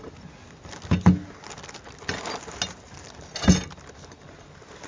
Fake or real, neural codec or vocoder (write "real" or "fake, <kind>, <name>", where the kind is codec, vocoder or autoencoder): real